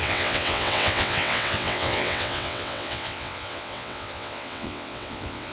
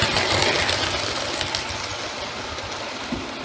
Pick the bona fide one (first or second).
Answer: second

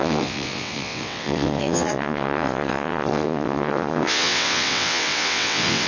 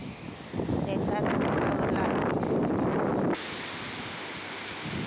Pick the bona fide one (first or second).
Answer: second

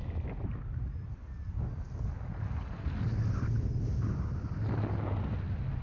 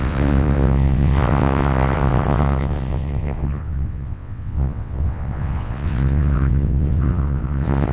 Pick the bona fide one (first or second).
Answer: first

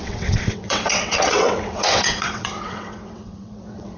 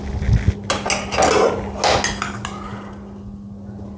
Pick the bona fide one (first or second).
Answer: second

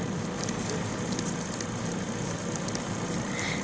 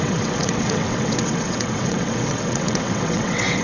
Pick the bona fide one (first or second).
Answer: first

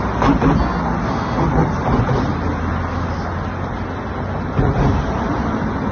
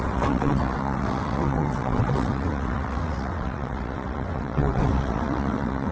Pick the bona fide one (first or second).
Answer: first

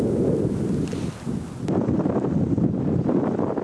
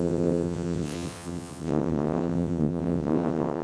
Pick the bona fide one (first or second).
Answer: first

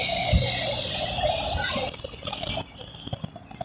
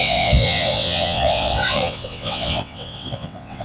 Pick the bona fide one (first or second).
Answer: first